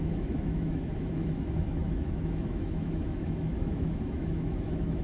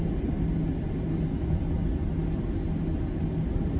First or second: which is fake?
first